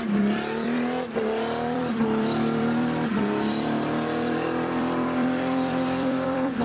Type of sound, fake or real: fake